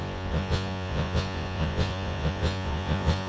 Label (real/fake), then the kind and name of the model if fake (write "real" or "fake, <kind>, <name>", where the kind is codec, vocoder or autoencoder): fake, vocoder, Vocos